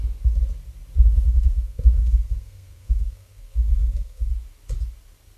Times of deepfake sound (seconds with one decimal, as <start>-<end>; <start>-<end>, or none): 1.1-4.3